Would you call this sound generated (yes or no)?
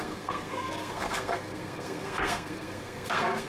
yes